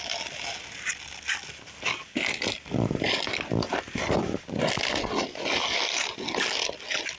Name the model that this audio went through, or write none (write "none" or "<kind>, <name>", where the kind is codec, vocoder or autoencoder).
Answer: none